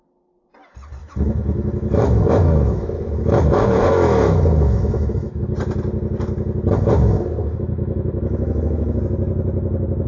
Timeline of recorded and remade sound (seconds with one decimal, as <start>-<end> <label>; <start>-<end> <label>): 0.0-1.0 recorded; 1.0-5.4 remade; 5.4-7.4 recorded; 7.4-9.0 remade; 9.0-10.1 recorded